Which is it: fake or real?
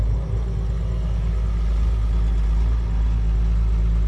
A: real